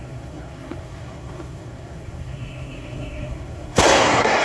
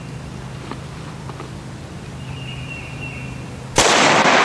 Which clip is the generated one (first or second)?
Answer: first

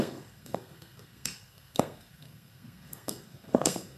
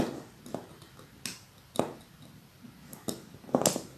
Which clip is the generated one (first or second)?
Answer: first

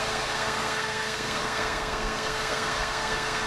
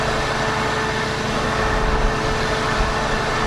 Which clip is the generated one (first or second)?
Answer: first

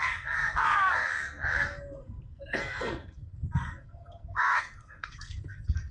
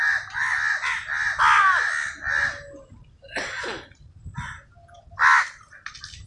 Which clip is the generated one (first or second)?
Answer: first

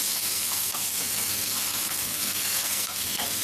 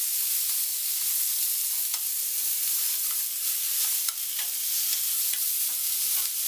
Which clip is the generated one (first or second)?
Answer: first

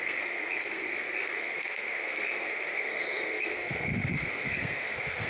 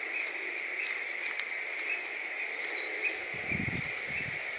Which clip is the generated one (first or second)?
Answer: first